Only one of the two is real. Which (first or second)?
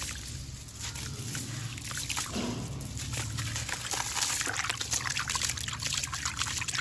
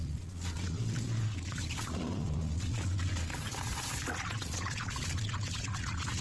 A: first